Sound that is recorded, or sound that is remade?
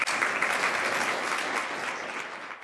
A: recorded